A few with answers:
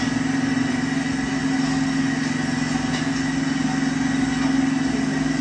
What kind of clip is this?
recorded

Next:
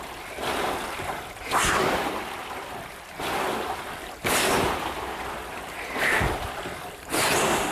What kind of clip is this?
remade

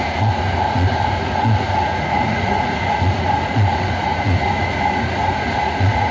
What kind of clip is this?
remade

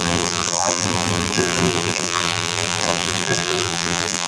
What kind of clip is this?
remade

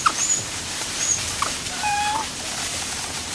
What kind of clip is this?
remade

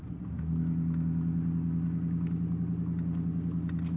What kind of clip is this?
recorded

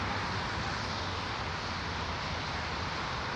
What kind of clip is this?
recorded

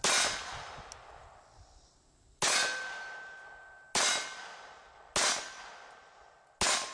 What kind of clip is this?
recorded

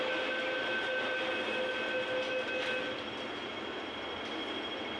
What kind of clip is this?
recorded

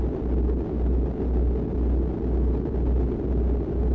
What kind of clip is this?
recorded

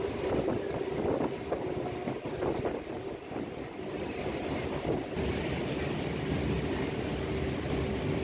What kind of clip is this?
recorded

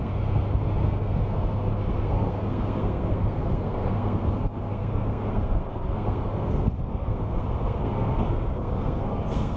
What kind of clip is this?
remade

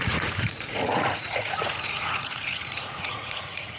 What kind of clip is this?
remade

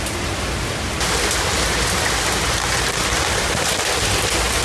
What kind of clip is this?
recorded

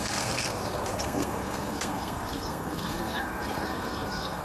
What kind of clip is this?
remade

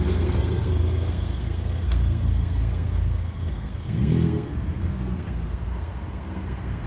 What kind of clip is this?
remade